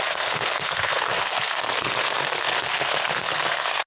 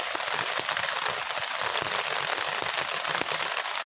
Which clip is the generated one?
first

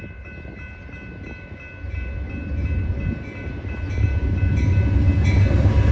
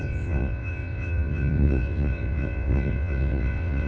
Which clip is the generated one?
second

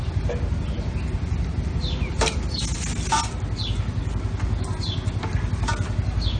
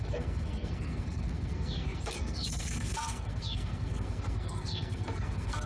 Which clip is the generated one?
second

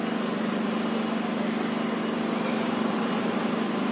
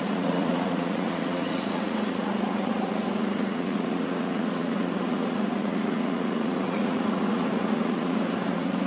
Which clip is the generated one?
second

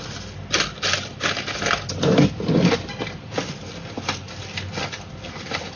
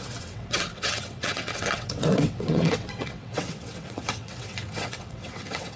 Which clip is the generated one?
second